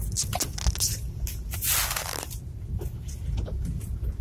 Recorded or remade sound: recorded